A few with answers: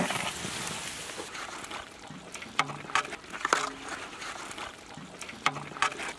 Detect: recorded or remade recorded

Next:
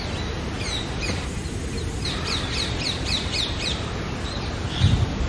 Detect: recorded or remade recorded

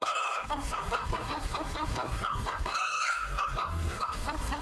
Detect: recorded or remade remade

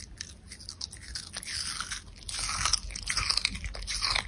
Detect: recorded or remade recorded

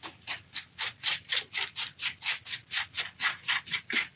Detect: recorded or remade recorded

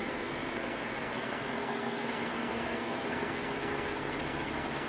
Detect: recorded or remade remade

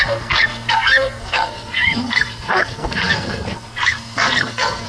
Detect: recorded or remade remade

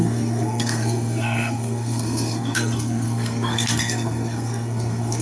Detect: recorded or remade remade